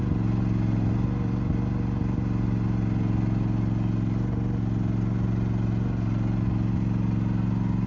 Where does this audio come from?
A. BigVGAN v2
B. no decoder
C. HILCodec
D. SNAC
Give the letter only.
B